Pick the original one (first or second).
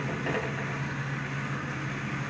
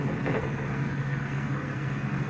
first